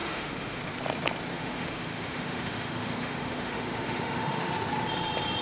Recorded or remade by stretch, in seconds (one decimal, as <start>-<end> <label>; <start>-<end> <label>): 0.0-0.6 remade; 0.6-1.3 recorded; 1.3-4.5 remade; 4.5-5.4 recorded